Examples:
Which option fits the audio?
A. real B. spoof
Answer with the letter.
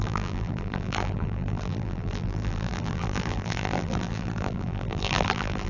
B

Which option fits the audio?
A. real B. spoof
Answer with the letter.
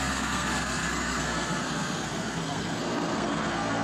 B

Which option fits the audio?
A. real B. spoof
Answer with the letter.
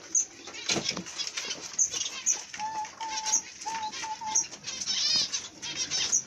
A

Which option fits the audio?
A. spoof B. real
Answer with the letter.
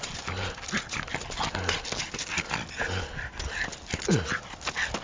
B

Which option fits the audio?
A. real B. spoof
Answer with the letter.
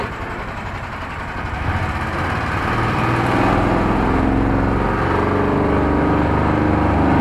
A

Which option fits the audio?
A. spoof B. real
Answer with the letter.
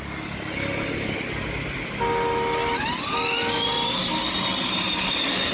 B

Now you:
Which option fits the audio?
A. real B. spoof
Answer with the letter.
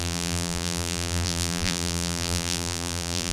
B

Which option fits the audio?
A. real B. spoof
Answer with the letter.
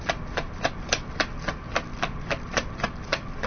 B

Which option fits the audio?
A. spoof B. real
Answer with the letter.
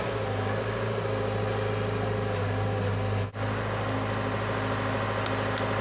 B